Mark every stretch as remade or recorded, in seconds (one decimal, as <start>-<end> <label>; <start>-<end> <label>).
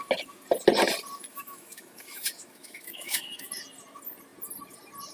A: 0.0-1.3 recorded; 1.3-3.5 remade; 3.5-5.1 recorded